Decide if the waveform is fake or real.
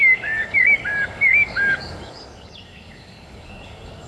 fake